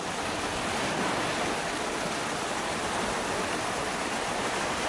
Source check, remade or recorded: recorded